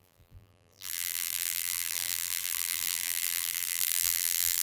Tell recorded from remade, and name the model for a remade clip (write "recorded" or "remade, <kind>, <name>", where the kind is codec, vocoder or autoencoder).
remade, vocoder, BigVGAN v2